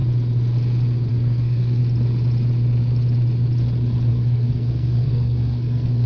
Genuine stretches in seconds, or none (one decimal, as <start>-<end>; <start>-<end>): 0.0-1.1; 1.8-4.1